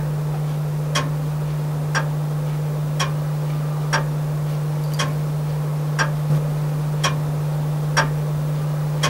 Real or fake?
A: real